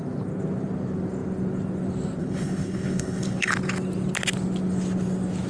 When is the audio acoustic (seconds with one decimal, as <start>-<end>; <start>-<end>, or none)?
0.0-2.2; 3.5-5.5